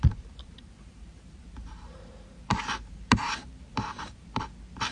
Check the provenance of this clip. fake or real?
fake